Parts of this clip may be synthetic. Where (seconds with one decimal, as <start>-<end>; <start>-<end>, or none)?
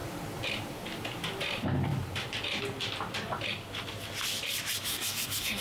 4.9-5.6